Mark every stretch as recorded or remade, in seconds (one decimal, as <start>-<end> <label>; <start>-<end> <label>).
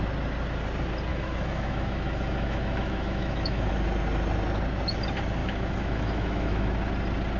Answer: 0.0-1.1 recorded; 1.1-3.7 remade; 3.7-5.4 recorded; 5.4-6.7 remade; 6.7-7.4 recorded